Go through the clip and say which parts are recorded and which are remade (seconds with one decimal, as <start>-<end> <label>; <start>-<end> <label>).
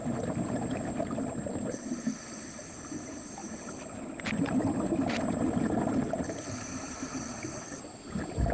0.0-8.5 recorded